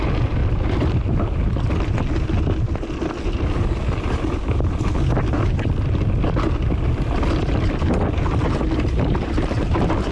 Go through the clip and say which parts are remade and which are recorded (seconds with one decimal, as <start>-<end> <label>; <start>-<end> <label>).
0.0-10.1 recorded